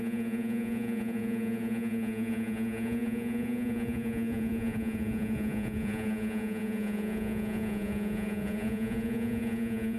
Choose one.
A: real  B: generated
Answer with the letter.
B